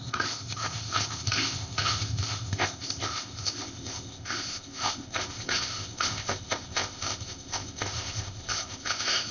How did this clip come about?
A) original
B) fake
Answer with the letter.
B